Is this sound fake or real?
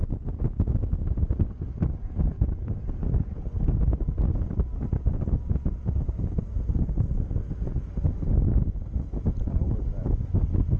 real